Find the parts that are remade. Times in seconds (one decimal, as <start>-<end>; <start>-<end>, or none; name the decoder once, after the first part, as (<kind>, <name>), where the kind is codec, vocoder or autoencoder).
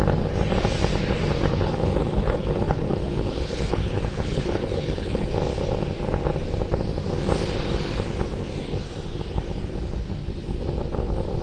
1.5-5.3 (codec, HILCodec)